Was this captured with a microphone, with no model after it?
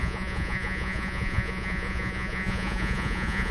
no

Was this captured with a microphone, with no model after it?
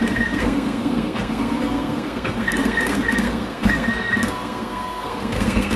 no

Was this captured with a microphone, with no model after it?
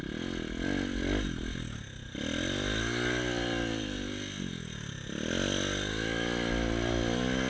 yes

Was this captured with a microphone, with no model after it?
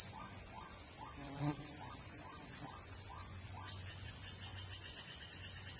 no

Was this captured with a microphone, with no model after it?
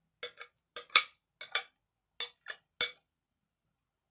yes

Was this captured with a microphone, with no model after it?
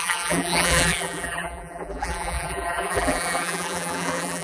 no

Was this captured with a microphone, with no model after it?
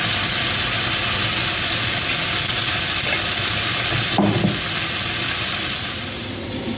yes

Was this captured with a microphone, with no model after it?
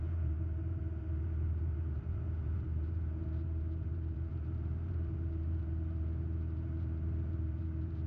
no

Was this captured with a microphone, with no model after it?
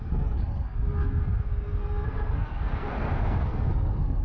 no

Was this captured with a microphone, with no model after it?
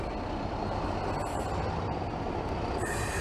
yes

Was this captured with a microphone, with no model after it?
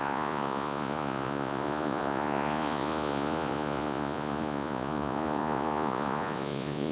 no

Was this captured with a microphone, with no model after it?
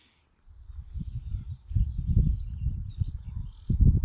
yes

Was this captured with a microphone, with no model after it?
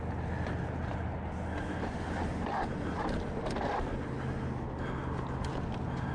yes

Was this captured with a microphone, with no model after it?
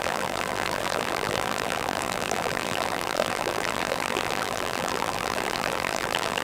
no